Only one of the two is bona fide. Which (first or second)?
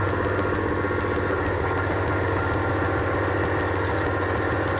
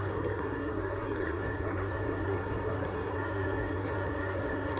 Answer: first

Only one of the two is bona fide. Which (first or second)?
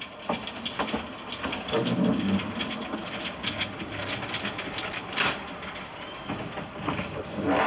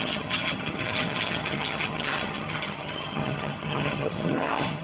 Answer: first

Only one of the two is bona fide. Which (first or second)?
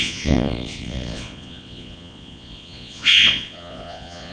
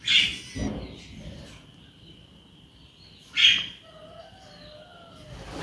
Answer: second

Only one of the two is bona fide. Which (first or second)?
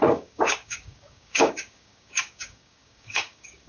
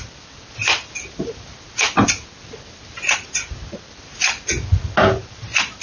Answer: second